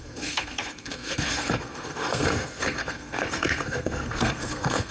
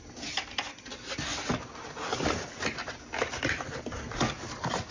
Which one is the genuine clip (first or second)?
second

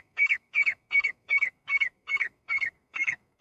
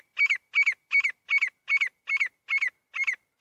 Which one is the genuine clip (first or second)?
second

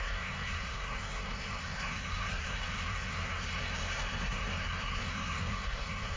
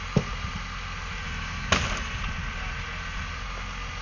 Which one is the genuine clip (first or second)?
second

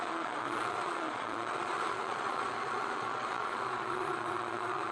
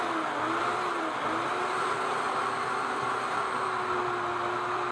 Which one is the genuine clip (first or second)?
second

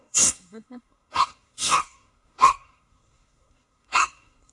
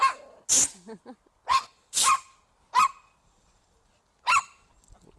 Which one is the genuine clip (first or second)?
second